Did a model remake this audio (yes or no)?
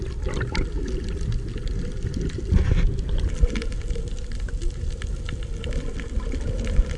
no